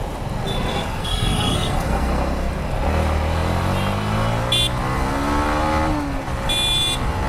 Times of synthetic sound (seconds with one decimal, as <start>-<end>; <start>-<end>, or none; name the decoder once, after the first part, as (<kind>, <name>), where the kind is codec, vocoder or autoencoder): 0.7-2.5 (codec, SNAC)